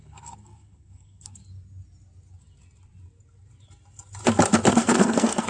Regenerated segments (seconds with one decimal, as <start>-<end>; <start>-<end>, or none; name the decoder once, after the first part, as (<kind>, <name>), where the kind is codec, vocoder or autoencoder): 0.0-1.4 (codec, SNAC); 4.7-5.5